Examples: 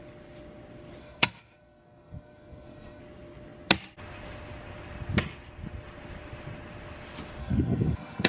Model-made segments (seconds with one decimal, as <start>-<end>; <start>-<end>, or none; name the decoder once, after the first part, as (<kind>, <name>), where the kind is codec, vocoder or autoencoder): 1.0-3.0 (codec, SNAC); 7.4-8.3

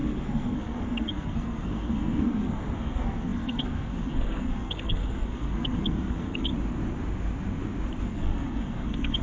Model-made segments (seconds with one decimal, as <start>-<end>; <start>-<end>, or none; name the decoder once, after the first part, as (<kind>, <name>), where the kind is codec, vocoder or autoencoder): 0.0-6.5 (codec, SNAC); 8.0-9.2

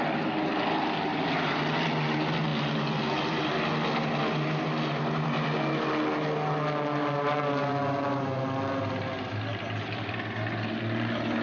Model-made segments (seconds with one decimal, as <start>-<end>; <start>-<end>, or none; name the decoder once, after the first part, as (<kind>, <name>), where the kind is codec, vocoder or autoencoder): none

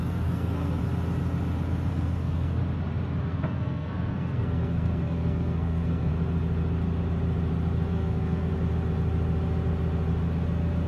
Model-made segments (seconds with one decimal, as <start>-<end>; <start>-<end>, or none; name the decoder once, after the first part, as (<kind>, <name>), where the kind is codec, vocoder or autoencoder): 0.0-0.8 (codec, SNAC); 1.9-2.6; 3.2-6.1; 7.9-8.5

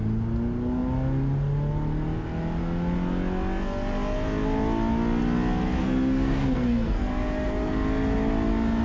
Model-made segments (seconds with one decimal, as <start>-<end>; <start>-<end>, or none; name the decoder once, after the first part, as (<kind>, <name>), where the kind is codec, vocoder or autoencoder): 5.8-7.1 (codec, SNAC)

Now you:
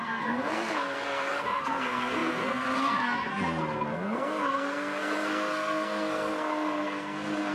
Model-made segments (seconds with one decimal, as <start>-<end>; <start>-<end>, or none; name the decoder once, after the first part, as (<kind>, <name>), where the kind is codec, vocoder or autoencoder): 0.0-7.5 (codec, SNAC)

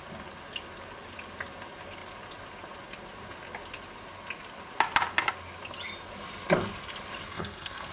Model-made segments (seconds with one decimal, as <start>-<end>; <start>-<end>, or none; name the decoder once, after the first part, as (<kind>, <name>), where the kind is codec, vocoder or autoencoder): 7.3-7.9 (codec, SNAC)

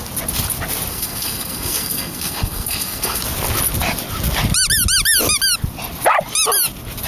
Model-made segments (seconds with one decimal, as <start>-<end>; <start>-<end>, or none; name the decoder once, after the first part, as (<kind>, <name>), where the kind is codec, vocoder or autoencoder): 0.9-3.2 (codec, SNAC)